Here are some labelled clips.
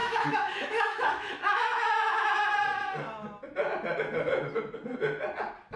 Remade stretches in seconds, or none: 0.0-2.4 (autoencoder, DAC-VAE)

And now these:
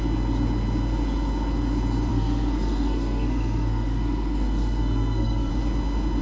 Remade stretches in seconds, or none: 2.1-5.5 (codec, SNAC)

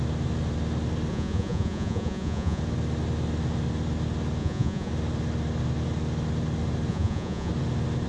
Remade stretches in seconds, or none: 1.1-2.6 (vocoder, Vocos); 4.4-4.9; 6.9-7.5

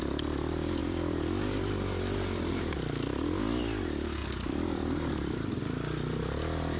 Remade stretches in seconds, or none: 0.8-2.5 (vocoder, BigVGAN v2); 4.2-5.6

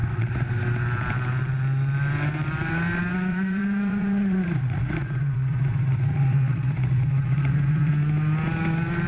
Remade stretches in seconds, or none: 0.0-0.5 (vocoder, Vocos); 3.3-7.9

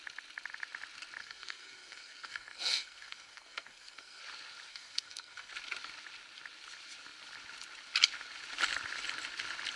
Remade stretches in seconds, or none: 1.2-4.2 (codec, SNAC); 4.7-5.5

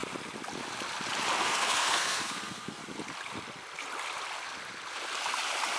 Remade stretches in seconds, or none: 1.4-2.8 (codec, SNAC)